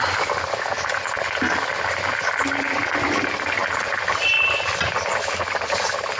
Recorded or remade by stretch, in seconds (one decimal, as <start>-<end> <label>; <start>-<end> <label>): 0.0-6.2 recorded

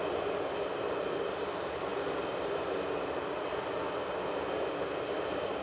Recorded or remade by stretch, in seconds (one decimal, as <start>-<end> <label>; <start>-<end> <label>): 0.0-5.6 recorded